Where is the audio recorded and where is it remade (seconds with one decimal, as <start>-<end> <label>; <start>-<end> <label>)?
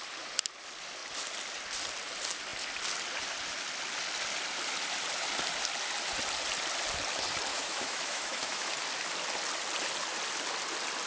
0.0-7.5 recorded; 7.5-8.7 remade; 8.7-11.1 recorded